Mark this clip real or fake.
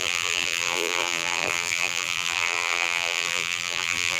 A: fake